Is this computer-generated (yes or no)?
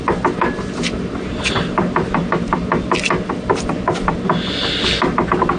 no